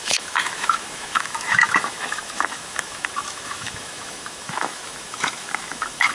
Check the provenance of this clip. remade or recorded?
remade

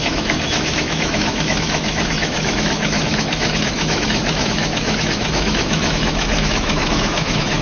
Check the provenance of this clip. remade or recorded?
remade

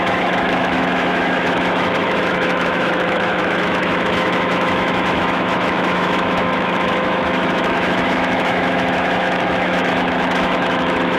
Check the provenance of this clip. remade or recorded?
remade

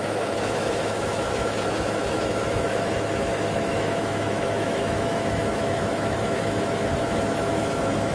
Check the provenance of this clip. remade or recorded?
remade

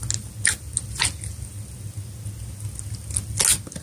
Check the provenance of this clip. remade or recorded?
recorded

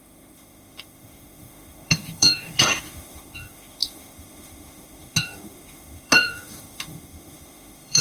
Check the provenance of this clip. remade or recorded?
remade